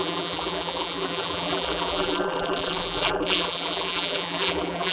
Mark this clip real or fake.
fake